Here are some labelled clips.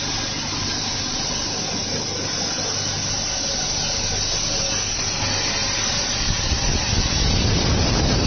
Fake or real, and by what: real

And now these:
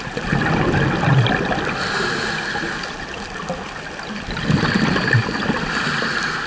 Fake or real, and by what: real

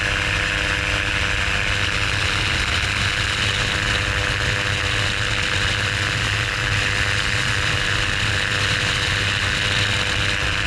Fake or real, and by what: real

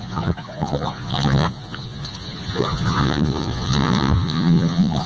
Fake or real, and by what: fake, vocoder, Vocos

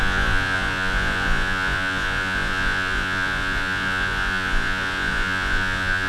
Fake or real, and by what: fake, vocoder, Vocos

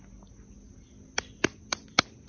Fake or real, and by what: real